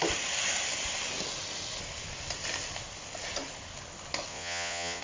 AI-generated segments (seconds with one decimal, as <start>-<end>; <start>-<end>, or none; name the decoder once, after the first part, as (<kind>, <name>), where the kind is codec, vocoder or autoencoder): 4.3-5.0 (vocoder, Vocos)